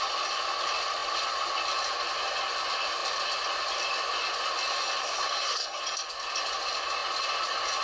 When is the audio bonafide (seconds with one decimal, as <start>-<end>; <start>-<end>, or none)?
0.0-5.0; 5.8-7.8